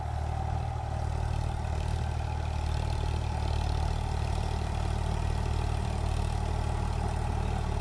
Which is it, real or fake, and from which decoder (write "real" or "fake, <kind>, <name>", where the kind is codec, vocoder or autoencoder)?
real